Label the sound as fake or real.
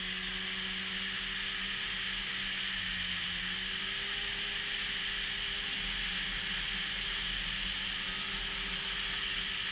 real